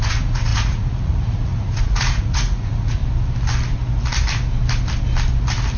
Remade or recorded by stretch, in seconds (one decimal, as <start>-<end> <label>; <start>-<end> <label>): 0.0-3.0 remade; 3.0-5.8 recorded